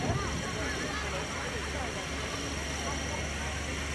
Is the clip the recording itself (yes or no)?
yes